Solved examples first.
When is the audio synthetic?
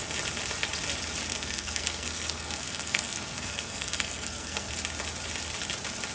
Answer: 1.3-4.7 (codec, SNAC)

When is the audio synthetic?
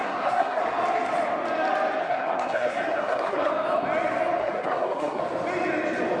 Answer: 0.0-0.6 (codec, SNAC); 2.0-3.5; 4.4-5.2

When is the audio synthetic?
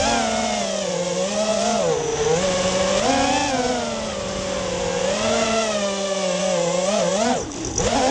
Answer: none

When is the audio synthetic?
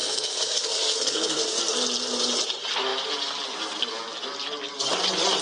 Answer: 0.0-1.6 (codec, SNAC)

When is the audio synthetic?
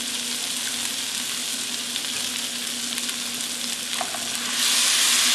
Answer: none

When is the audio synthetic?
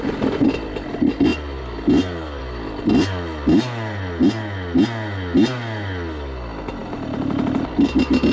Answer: none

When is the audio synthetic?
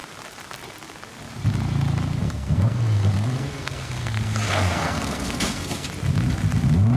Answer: 2.2-5.9 (codec, SNAC)